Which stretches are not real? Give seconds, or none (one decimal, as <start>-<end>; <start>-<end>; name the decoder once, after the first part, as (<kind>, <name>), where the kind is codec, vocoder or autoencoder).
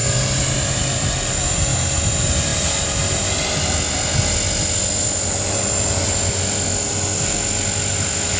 none